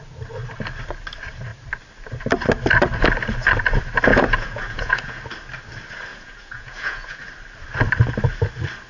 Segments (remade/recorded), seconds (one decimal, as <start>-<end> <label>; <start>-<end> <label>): 0.0-4.1 recorded; 4.1-5.2 remade; 5.2-6.1 recorded; 6.1-7.2 remade; 7.2-8.9 recorded